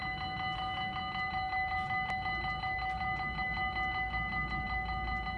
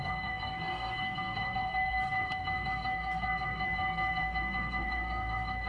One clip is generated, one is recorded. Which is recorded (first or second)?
first